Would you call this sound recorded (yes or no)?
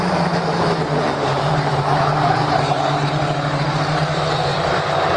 no